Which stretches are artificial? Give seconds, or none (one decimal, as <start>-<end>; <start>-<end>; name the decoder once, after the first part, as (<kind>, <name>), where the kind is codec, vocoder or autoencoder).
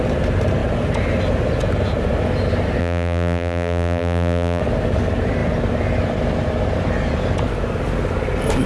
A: 2.8-4.6 (vocoder, BigVGAN v2)